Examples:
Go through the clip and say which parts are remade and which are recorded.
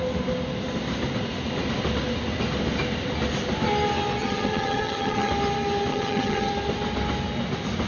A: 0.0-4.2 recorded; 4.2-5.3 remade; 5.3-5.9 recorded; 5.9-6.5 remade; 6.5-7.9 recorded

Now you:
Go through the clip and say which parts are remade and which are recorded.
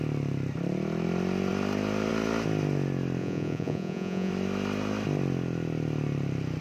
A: 0.0-3.2 recorded; 3.2-4.3 remade; 4.3-6.6 recorded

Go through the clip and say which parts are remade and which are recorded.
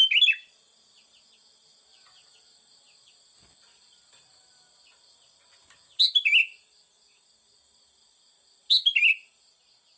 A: 0.0-10.0 recorded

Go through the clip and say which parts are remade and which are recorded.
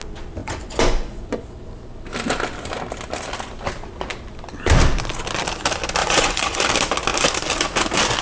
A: 0.0-0.4 recorded; 0.4-1.3 remade; 1.3-6.0 recorded; 6.0-6.6 remade; 6.6-8.2 recorded